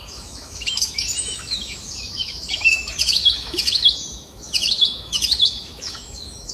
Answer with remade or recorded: remade